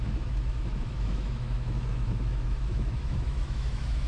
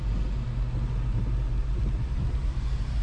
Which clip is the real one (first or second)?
second